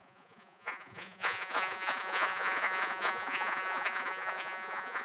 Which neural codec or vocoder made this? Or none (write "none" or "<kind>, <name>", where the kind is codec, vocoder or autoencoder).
vocoder, Vocos